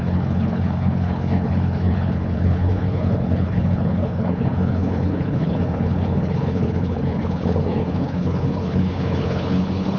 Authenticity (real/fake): fake